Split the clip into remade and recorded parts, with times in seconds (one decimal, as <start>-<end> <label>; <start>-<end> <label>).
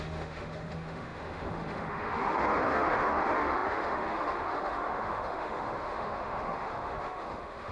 0.0-7.7 remade